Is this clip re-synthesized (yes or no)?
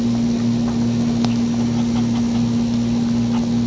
no